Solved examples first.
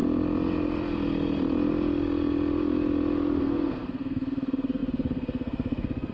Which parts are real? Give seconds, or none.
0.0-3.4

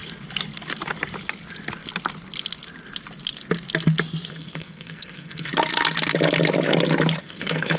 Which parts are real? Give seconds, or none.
0.0-4.3; 5.5-7.2

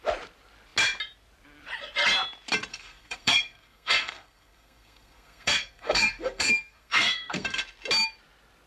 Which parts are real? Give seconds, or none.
0.0-2.7; 7.6-8.7

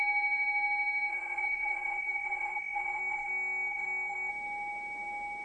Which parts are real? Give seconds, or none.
0.0-1.1; 4.3-5.4

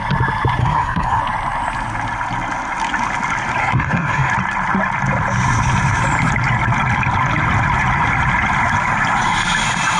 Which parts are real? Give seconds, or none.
0.0-0.6; 1.2-3.6; 4.3-10.0

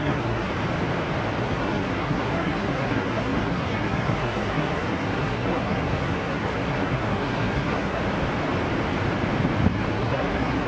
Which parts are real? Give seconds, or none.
0.5-1.4; 8.0-9.7

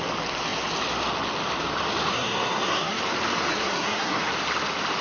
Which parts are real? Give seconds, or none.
0.0-2.1; 3.0-3.5; 4.2-5.0

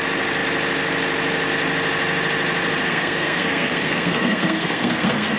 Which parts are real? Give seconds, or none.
0.0-2.9